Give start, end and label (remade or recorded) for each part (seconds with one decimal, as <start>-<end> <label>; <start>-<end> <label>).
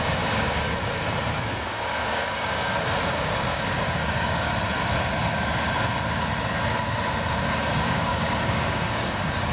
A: 0.0-4.5 remade; 4.5-7.3 recorded; 7.3-9.5 remade